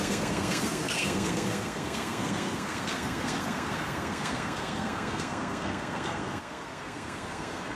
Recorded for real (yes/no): no